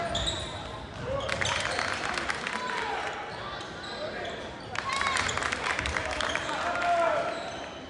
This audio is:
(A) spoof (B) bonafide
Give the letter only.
B